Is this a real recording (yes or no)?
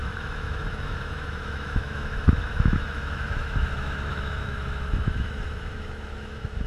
no